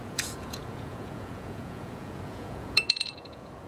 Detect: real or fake fake